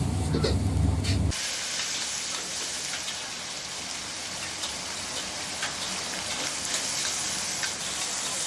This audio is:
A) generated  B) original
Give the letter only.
B